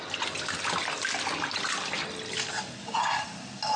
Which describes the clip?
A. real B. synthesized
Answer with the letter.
A